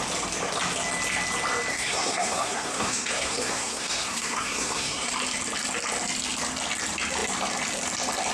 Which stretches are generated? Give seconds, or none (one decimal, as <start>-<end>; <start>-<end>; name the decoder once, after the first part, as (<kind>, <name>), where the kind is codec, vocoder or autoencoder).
1.7-5.1 (codec, SNAC)